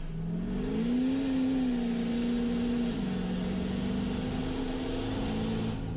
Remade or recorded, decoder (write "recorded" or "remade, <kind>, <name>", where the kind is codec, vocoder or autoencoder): recorded